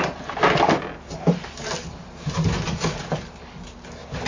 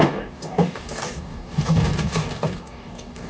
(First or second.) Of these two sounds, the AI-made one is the second